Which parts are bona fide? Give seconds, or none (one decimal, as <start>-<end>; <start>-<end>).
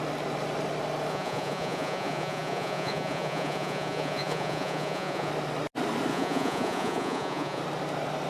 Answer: 0.0-1.1; 5.3-6.1; 7.6-8.3